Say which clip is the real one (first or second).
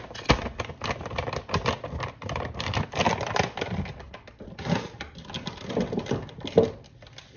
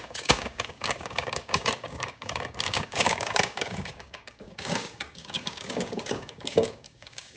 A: first